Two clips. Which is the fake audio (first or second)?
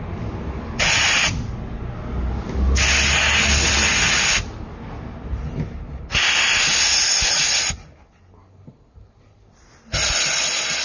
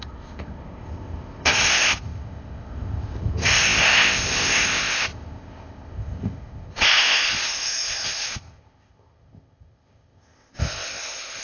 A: second